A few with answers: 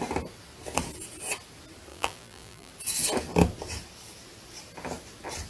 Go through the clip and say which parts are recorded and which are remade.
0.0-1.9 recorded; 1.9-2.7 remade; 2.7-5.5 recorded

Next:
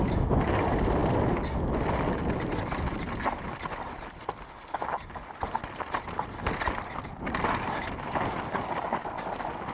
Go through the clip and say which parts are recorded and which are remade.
0.0-9.7 recorded

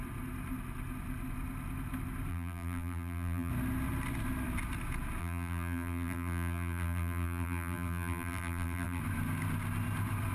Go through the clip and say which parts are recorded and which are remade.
0.0-2.3 recorded; 2.3-3.5 remade; 3.5-5.2 recorded; 5.2-9.0 remade; 9.0-10.3 recorded